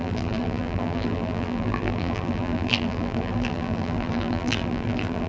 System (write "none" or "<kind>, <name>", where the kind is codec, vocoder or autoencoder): vocoder, BigVGAN v2